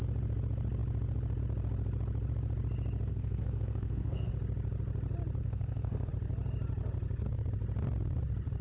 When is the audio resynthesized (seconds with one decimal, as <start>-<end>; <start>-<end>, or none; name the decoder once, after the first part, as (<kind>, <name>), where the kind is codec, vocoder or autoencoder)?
3.1-4.3 (codec, SNAC); 5.4-6.1